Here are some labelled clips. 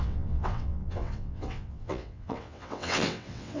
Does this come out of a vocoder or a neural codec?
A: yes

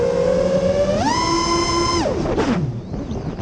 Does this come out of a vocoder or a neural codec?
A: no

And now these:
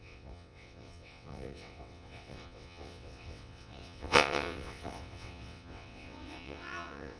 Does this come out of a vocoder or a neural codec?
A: yes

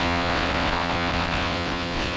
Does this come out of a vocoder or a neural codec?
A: yes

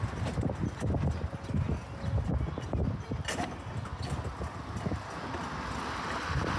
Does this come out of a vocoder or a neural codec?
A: no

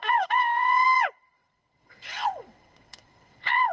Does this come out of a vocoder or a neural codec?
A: yes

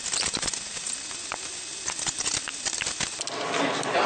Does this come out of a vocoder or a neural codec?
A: no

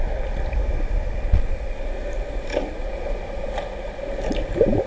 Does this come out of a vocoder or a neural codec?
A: no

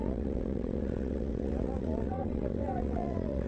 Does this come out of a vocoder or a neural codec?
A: yes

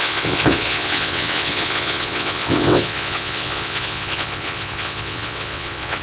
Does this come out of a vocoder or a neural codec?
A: yes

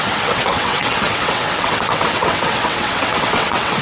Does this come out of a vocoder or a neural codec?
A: yes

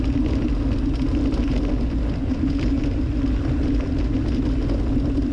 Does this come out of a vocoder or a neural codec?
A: no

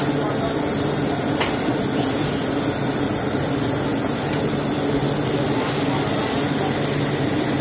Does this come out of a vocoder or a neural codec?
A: no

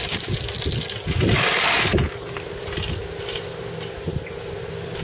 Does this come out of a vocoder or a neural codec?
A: no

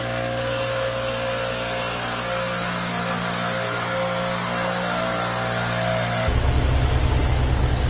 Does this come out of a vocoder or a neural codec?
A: no